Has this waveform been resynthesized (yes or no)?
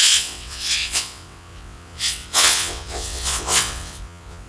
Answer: yes